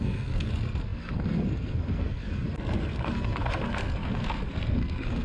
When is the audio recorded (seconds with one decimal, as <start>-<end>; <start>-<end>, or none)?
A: none